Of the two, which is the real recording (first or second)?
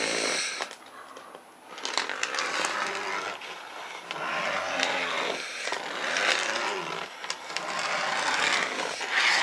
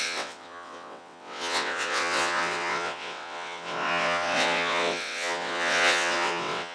first